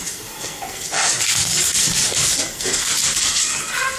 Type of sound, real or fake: fake